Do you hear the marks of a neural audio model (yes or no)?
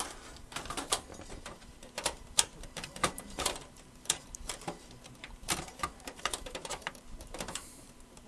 yes